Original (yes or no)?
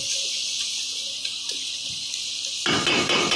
yes